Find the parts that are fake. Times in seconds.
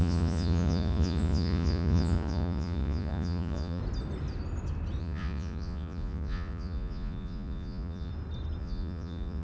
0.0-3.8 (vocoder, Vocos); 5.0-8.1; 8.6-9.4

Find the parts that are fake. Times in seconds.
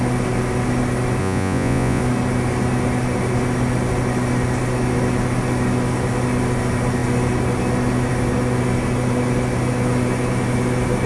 1.2-2.0 (vocoder, Vocos)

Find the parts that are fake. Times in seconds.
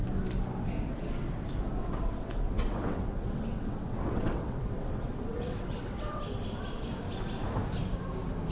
1.8-6.2 (vocoder, WaveNeXt)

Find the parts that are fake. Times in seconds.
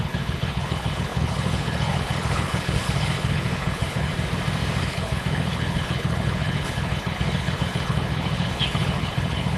0.0-4.1 (codec, HILCodec); 4.8-9.6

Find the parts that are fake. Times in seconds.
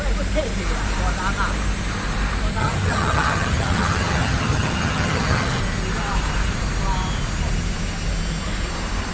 2.6-5.6 (vocoder, HiFi-GAN)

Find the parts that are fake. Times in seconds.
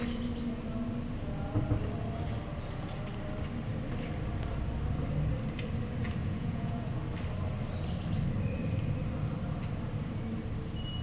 6.2-7.0 (vocoder, Vocos)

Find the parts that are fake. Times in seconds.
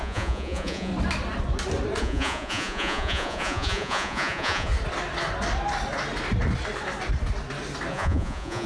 0.0-0.9 (vocoder, Vocos); 2.0-4.7; 7.9-8.7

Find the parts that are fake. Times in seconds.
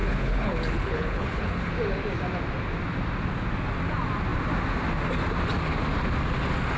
0.0-1.7 (codec, HILCodec)